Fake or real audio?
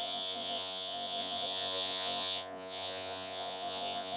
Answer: fake